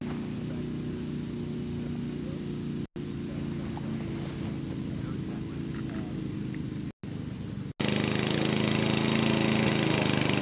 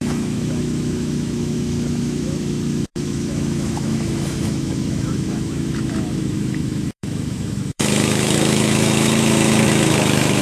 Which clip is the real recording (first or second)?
first